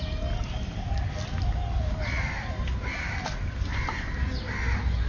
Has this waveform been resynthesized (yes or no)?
no